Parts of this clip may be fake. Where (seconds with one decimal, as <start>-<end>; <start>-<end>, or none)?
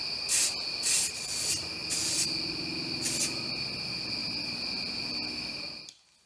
none